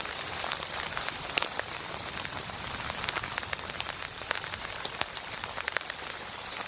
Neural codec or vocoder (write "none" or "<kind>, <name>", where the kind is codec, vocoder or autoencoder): vocoder, BigVGAN v2